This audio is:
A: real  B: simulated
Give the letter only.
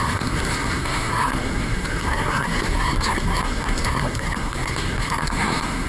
B